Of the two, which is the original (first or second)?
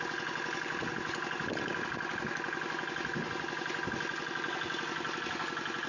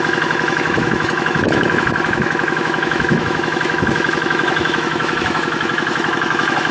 first